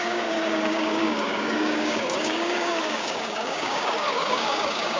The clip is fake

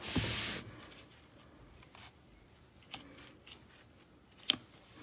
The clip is real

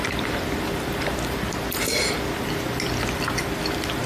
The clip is real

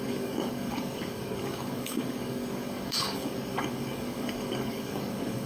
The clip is fake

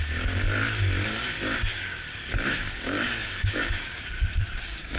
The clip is fake